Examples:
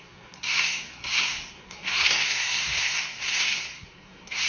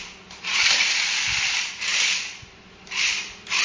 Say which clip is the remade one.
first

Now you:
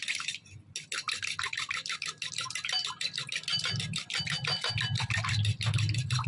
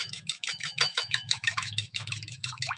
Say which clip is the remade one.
second